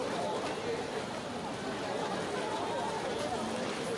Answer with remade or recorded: recorded